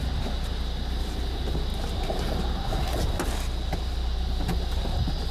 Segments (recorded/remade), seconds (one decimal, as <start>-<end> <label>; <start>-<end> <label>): 0.0-5.3 recorded